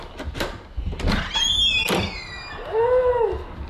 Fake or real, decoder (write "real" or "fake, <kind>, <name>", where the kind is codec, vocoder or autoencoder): real